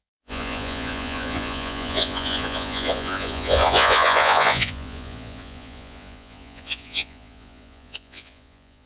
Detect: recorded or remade remade